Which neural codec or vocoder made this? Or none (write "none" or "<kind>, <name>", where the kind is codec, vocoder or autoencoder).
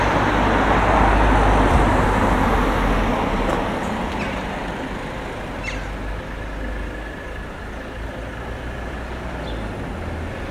none